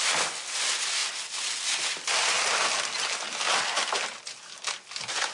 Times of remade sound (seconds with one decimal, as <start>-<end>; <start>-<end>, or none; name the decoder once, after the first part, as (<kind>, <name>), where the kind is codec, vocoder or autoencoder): none